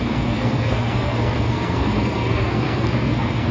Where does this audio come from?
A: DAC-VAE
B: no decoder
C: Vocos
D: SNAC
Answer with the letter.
D